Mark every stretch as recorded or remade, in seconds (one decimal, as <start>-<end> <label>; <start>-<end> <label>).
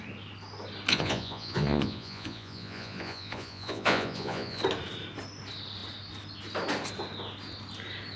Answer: 0.0-0.9 recorded; 0.9-4.6 remade; 4.6-8.2 recorded